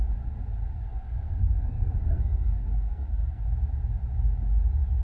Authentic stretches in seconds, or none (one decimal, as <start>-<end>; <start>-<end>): 0.0-0.7; 3.4-5.0